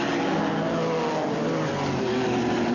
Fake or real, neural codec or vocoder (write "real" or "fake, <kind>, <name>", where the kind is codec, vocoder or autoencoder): real